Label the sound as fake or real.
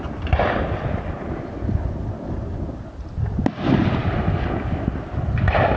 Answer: real